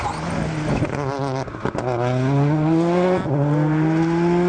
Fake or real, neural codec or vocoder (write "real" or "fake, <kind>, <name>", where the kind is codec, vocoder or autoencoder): real